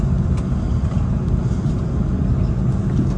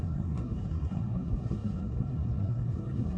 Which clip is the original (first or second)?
first